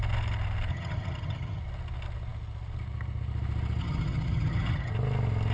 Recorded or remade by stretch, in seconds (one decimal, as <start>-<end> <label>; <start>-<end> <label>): 0.0-0.7 recorded; 0.7-1.6 remade; 1.6-3.8 recorded; 3.8-4.9 remade; 4.9-5.5 recorded